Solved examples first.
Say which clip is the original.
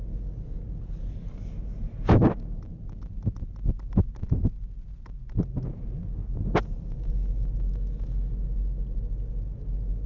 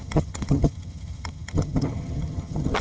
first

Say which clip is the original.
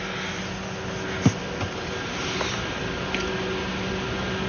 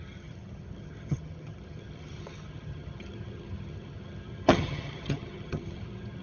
first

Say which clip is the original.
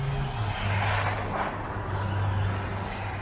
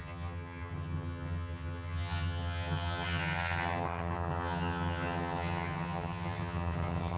first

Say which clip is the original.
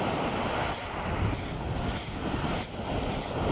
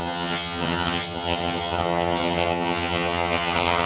first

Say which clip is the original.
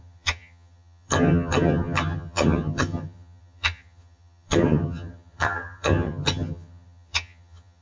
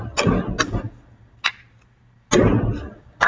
second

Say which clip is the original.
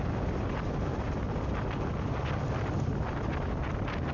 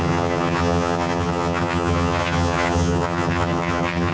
first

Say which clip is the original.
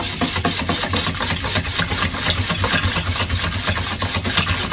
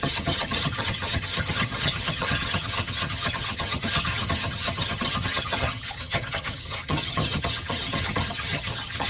first